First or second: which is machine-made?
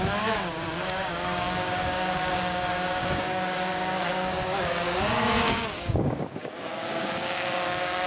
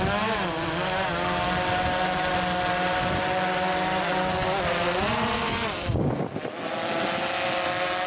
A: first